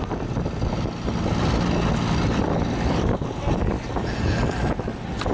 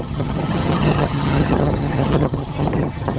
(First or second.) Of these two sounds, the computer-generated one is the second